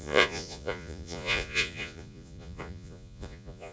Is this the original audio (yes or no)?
no